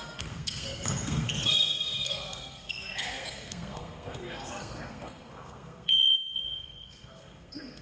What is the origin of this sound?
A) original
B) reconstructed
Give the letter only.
B